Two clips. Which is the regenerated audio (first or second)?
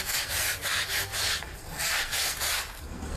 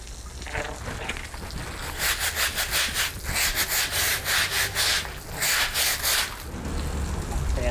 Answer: first